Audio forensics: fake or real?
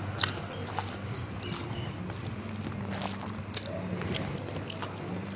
real